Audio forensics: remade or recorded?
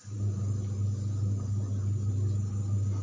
recorded